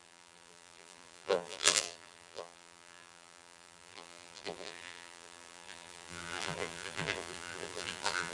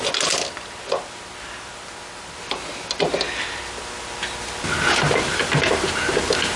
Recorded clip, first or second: second